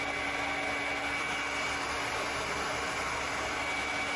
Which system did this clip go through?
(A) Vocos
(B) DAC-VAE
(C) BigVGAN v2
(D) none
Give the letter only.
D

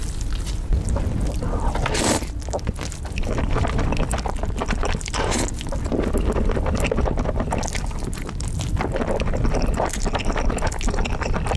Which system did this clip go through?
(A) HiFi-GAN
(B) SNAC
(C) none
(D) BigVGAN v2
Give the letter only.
C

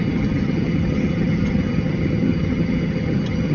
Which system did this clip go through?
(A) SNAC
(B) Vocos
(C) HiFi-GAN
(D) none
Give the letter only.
C